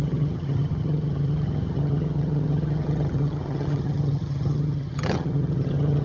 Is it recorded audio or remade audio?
remade